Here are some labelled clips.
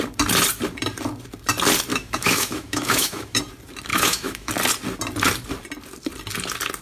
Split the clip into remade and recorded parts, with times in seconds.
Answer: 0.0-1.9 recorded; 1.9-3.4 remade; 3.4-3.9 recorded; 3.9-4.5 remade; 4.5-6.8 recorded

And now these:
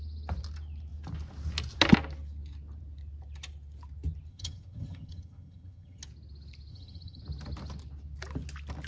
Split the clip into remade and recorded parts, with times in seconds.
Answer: 0.0-4.3 recorded; 4.3-6.0 remade; 6.0-6.7 recorded; 6.7-7.2 remade; 7.2-8.9 recorded

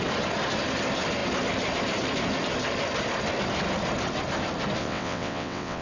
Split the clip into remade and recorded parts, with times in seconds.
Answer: 0.0-4.8 recorded; 4.8-5.8 remade

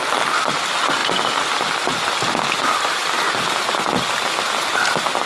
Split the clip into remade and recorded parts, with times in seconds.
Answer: 0.0-5.3 recorded

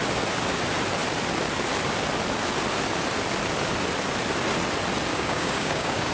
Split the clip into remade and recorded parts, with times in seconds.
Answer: 0.0-5.1 recorded; 5.1-6.1 remade

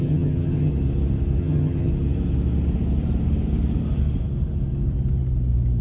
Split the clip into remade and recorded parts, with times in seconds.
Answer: 0.0-0.7 remade; 0.7-1.4 recorded; 1.4-1.9 remade; 1.9-5.8 recorded